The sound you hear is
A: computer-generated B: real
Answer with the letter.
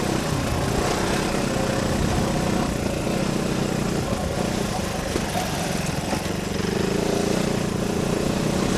B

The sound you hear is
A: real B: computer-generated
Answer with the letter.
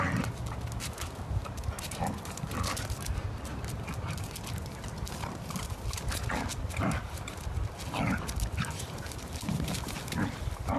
A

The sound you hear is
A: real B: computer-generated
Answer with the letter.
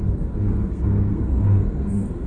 B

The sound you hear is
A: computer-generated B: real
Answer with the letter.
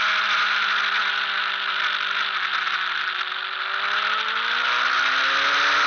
B